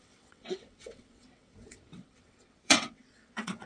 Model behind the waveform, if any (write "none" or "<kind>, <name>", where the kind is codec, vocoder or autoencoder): vocoder, WaveNeXt